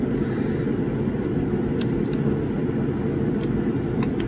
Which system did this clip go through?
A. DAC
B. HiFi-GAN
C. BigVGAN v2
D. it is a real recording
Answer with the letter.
D